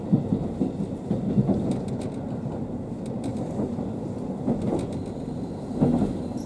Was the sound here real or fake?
real